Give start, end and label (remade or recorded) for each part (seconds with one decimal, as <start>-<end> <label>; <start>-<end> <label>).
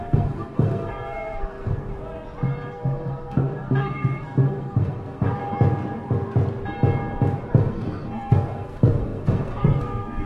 0.0-1.9 remade; 1.9-2.7 recorded; 2.7-5.4 remade; 5.4-7.5 recorded; 7.5-10.3 remade